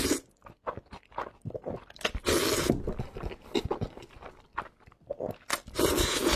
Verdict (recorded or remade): recorded